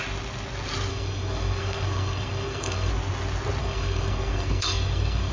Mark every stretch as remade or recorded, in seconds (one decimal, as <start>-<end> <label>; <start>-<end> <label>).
0.0-0.9 recorded; 0.9-2.9 remade; 2.9-3.6 recorded; 3.6-5.3 remade